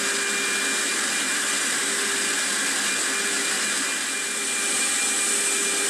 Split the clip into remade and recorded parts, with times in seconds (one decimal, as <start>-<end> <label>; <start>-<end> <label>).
0.0-5.9 recorded